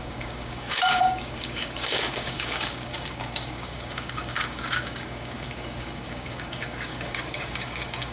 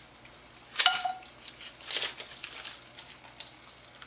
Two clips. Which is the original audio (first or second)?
second